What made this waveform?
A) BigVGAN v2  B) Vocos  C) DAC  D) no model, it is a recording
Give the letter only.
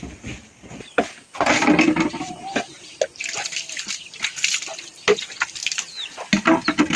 D